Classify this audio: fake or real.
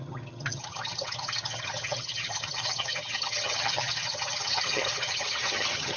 fake